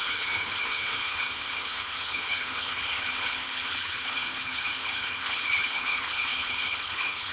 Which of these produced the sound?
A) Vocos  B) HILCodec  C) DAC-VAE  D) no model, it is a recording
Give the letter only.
B